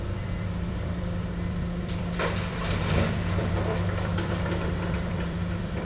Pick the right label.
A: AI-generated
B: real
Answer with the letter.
A